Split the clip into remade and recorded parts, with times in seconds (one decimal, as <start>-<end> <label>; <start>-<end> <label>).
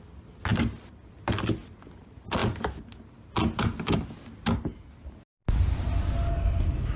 0.0-7.0 recorded